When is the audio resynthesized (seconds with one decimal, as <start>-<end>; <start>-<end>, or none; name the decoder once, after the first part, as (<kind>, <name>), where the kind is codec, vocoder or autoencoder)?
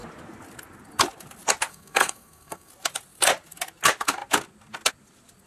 1.7-2.7 (codec, SNAC)